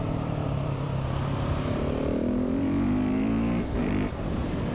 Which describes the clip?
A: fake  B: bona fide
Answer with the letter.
A